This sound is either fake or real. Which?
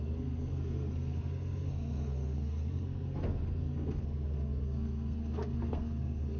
fake